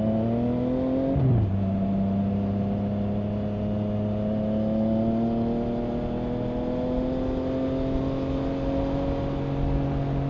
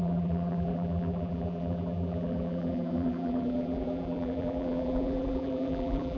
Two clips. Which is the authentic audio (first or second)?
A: first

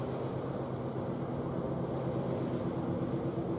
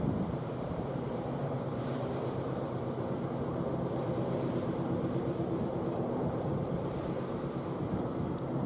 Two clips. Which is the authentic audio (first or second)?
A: first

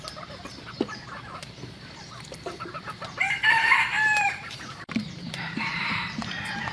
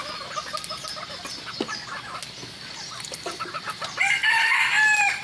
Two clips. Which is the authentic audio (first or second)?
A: second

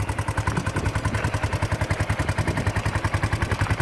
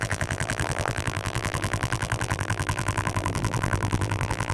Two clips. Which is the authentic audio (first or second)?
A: first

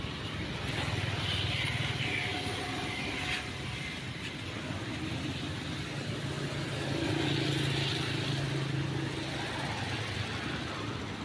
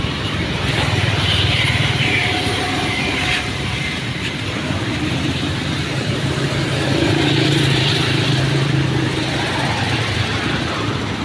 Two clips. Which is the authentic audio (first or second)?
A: first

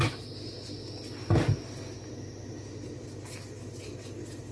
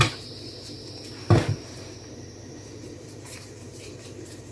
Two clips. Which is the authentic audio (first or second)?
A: first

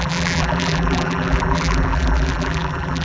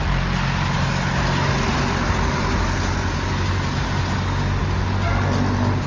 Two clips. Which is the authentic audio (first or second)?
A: second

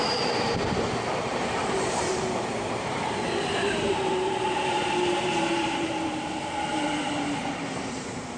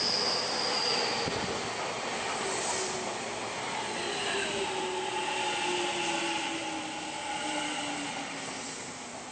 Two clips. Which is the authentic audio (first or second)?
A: second